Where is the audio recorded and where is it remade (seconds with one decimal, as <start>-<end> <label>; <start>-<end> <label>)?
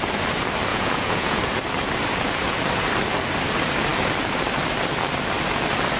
0.0-0.7 recorded; 0.7-1.4 remade; 1.4-6.0 recorded